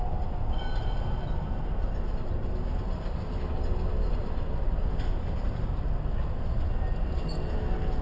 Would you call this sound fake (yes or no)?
no